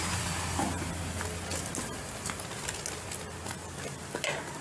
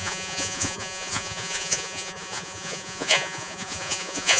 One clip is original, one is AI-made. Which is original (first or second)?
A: first